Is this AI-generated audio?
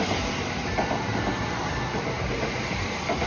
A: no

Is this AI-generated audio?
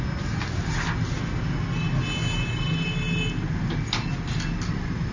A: no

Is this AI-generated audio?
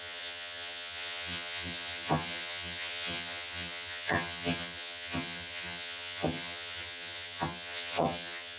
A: yes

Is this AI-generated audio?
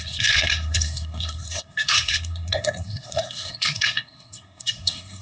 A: yes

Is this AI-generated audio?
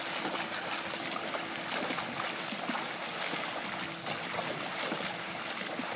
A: no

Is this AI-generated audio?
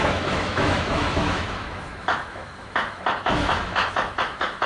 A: yes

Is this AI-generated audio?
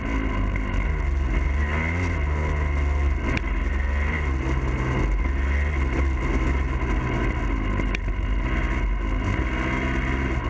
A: no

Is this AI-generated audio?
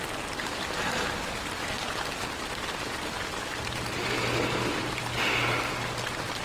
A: no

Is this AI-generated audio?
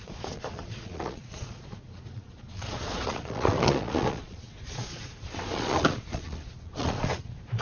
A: yes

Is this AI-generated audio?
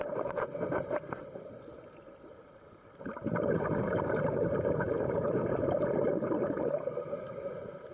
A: yes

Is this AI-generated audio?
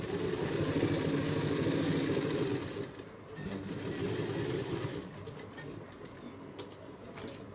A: no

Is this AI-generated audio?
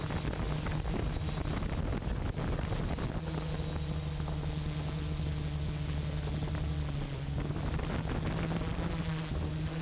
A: no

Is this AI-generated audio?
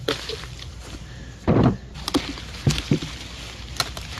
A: no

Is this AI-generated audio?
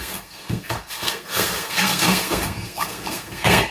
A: yes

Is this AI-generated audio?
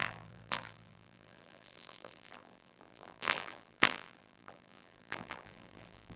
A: yes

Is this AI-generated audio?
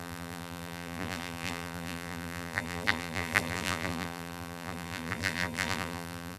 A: yes